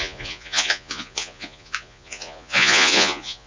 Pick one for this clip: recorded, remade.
remade